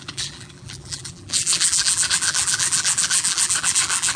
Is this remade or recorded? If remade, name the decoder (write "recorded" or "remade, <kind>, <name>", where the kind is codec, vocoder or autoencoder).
remade, vocoder, BigVGAN v2